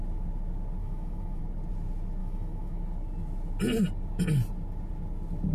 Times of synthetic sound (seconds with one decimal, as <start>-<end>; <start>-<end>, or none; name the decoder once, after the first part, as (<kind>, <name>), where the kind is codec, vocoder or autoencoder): 0.8-1.4 (autoencoder, DAC-VAE); 2.2-2.8

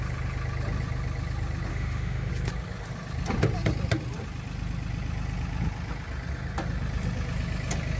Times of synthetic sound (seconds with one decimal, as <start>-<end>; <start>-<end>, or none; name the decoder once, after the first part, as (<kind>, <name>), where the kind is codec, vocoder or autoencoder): 1.7-2.3 (autoencoder, DAC-VAE)

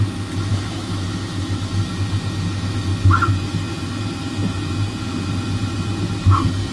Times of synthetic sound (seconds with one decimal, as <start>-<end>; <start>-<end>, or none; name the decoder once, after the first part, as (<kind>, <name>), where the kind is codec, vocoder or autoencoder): 0.5-1.7 (autoencoder, DAC-VAE)

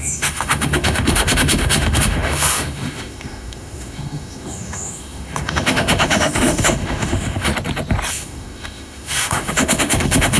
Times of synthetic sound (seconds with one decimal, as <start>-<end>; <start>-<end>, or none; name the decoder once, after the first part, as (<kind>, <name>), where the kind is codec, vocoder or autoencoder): 0.0-7.5 (autoencoder, DAC-VAE); 8.1-10.4